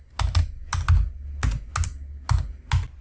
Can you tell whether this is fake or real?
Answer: real